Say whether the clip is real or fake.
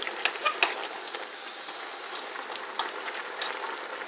real